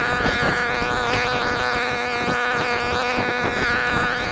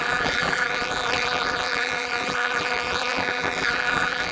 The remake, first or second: second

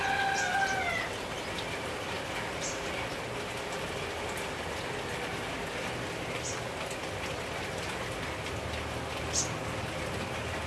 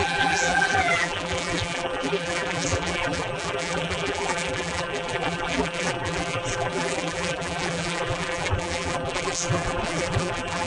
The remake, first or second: second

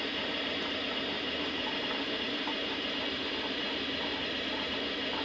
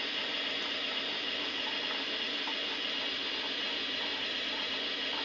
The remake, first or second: first